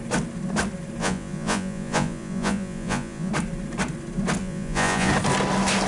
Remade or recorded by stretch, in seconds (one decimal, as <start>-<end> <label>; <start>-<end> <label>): 0.0-1.0 recorded; 1.0-3.3 remade; 3.3-4.4 recorded; 4.4-5.1 remade; 5.1-5.9 recorded